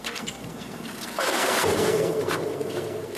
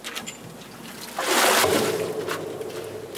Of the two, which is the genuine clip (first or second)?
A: second